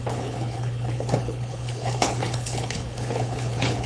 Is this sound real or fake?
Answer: fake